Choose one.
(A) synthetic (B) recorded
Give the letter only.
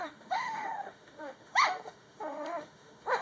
A